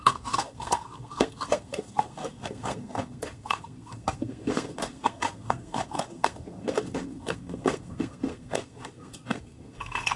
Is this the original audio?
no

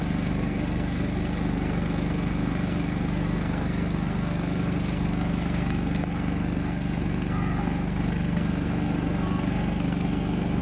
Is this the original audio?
no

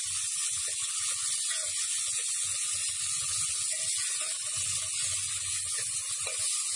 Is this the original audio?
no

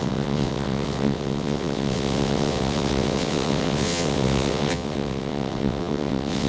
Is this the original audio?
no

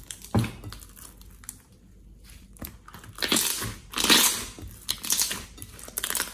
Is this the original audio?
yes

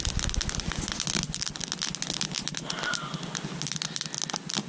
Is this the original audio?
yes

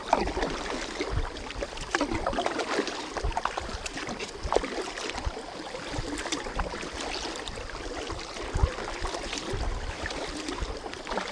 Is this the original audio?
yes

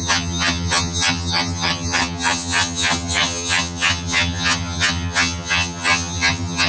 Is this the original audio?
no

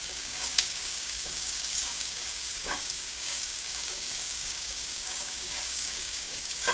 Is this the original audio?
no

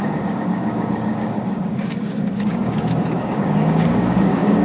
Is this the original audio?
no